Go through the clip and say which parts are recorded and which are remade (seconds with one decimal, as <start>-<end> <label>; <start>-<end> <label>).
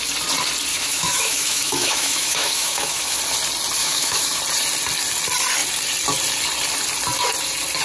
0.0-0.7 recorded; 0.7-3.2 remade; 3.2-3.8 recorded; 3.8-4.4 remade; 4.4-7.8 recorded